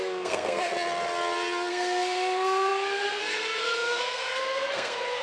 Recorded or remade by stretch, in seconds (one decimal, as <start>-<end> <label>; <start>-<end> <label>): 0.0-0.7 remade; 0.7-1.7 recorded; 1.7-5.2 remade